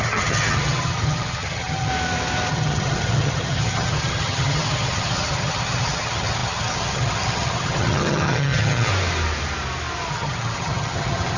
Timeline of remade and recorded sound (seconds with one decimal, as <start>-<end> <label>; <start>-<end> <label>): 0.0-1.9 remade; 1.9-2.5 recorded; 2.5-8.9 remade; 8.9-10.1 recorded; 10.1-11.4 remade